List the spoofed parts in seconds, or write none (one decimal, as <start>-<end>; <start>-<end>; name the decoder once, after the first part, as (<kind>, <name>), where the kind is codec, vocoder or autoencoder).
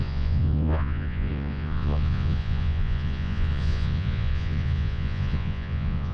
0.0-6.1 (vocoder, Vocos)